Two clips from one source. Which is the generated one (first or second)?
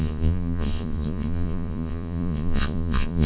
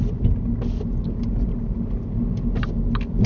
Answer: first